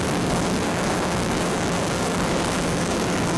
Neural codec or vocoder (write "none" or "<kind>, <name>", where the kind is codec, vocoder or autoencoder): codec, DAC